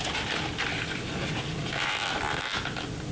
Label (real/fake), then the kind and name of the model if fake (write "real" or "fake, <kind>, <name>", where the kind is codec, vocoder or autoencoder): real